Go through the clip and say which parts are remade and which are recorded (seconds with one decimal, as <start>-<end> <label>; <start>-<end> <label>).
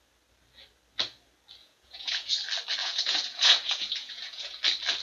0.0-1.6 recorded; 1.6-2.3 remade; 2.3-2.8 recorded; 2.8-4.6 remade; 4.6-5.0 recorded